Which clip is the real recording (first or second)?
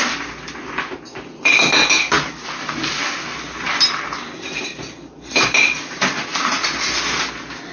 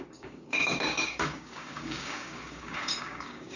first